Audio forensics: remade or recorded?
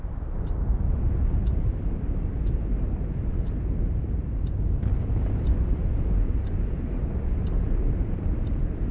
recorded